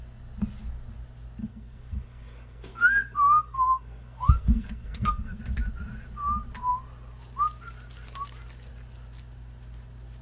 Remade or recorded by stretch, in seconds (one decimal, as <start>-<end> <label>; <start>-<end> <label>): 0.0-1.4 recorded; 1.4-5.4 remade; 5.4-10.2 recorded